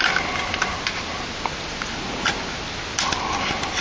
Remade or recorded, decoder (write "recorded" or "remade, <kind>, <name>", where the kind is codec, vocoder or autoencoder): recorded